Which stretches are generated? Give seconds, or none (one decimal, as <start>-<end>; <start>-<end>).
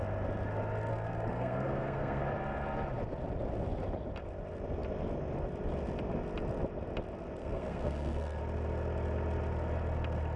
0.9-2.2; 7.4-8.4